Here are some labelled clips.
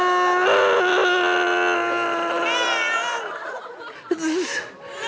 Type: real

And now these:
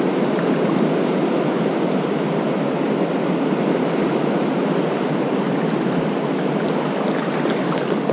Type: real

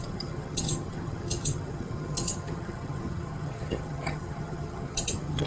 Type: fake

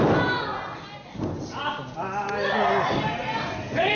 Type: real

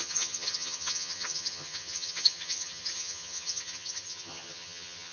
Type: fake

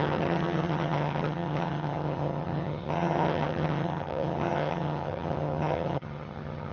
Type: fake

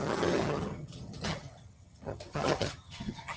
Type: fake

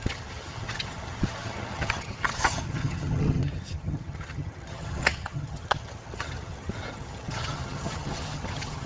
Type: fake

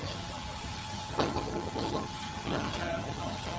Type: fake